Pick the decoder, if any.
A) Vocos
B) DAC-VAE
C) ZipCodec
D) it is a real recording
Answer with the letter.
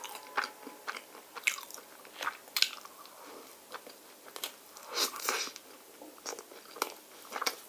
D